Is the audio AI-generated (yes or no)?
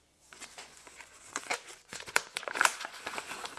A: yes